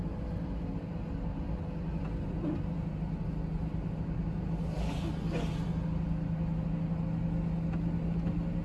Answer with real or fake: real